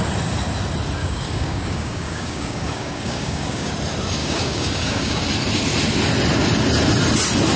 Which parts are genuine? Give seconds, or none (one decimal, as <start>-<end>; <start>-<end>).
0.0-1.0; 3.7-4.2; 5.2-7.6